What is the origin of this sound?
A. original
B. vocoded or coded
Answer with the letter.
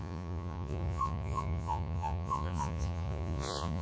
B